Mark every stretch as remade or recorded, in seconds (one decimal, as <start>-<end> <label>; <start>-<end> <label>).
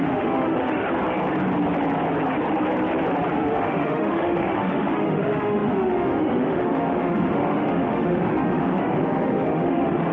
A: 0.0-0.8 remade; 0.8-3.3 recorded; 3.3-10.1 remade